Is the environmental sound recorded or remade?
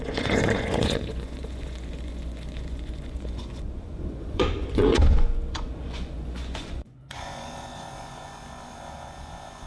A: remade